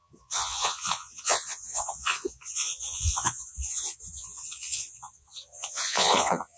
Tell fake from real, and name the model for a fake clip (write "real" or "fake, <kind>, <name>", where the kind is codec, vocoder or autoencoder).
fake, vocoder, Vocos